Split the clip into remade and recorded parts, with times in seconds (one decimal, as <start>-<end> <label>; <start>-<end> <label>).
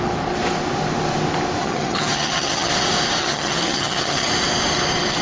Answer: 0.0-1.6 recorded; 1.6-2.7 remade; 2.7-3.2 recorded; 3.2-4.3 remade; 4.3-5.2 recorded